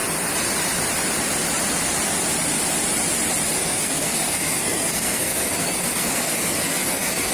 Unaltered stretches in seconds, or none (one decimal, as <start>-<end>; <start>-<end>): 0.0-3.6